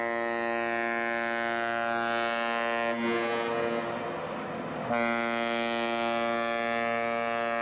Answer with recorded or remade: recorded